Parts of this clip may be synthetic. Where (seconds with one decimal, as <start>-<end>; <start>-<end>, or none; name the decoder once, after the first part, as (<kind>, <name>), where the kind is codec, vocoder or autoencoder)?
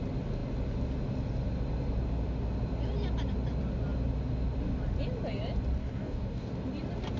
5.8-6.5 (codec, DAC)